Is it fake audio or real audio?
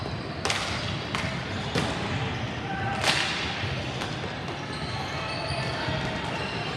real